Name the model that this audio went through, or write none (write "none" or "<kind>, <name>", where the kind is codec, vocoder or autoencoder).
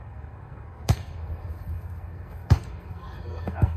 codec, SNAC